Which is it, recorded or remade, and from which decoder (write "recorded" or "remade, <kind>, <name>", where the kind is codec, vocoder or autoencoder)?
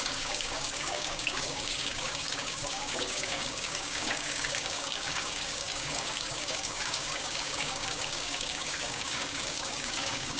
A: remade, codec, DAC